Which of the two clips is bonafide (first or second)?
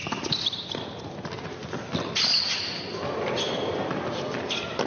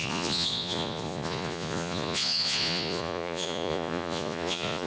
first